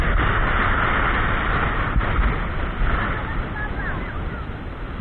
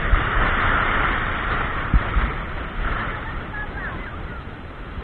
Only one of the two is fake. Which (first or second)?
second